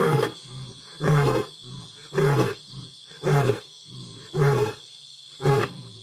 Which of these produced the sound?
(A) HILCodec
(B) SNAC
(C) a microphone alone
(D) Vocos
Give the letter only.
B